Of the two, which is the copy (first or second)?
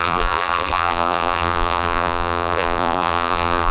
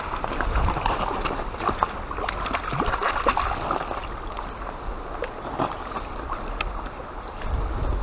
first